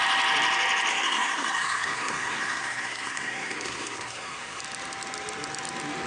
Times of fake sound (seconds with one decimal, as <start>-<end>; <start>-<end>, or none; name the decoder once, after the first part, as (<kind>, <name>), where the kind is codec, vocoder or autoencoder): 0.9-4.6 (codec, SNAC)